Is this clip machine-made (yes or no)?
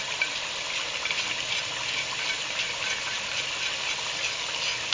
no